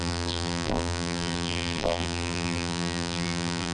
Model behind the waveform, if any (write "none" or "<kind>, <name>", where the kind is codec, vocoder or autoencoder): vocoder, BigVGAN v2